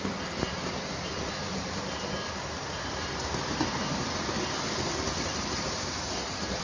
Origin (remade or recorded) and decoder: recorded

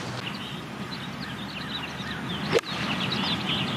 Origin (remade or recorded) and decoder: recorded